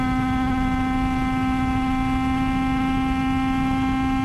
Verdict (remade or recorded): recorded